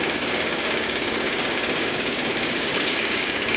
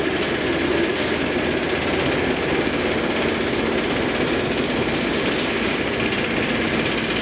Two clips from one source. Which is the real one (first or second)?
second